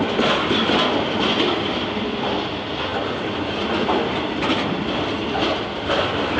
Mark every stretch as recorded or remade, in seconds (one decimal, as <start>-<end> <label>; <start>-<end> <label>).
0.0-6.4 recorded